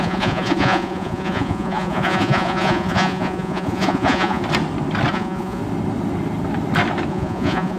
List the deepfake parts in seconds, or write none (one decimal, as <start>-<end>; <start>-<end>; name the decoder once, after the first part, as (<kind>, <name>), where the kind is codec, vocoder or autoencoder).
0.0-4.4 (vocoder, Vocos); 5.1-5.6; 7.1-7.8